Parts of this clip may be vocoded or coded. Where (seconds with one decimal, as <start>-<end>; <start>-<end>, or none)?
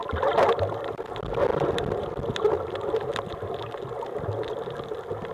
none